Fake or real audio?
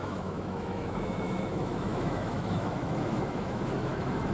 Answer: fake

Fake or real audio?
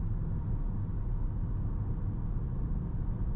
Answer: real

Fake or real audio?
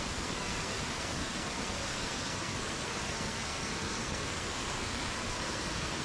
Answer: fake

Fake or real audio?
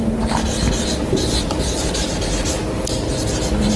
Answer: real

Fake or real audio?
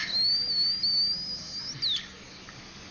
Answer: real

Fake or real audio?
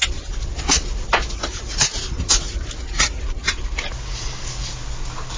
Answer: real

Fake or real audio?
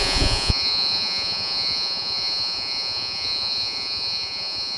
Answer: fake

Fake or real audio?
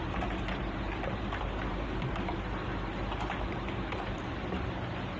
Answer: fake